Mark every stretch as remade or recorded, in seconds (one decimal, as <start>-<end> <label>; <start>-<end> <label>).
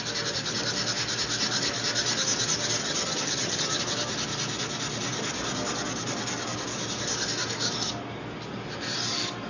0.0-2.8 recorded; 2.8-3.8 remade; 3.8-9.5 recorded